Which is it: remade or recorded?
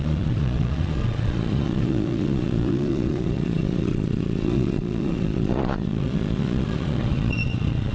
remade